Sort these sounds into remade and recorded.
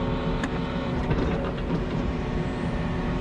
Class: remade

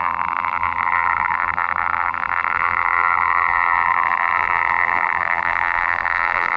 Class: remade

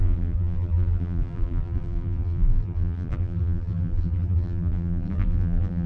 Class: remade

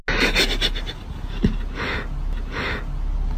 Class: recorded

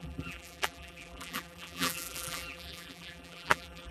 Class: remade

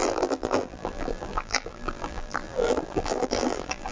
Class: remade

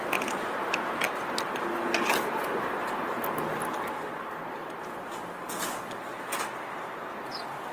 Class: recorded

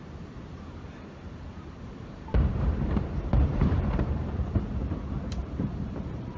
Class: remade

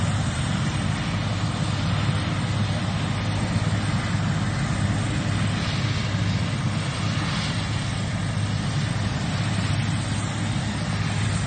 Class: recorded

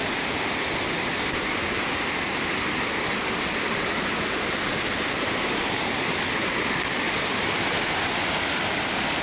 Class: remade